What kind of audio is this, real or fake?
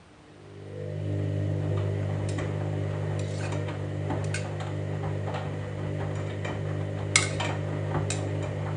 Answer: real